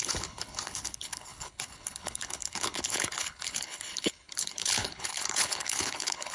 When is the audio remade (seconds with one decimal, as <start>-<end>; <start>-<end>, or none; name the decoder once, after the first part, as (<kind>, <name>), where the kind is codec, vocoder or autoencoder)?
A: 0.0-6.3 (codec, HILCodec)